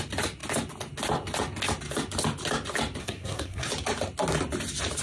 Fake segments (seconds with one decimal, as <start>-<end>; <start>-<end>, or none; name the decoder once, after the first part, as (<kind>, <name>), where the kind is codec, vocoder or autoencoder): 3.0-3.7 (codec, SNAC)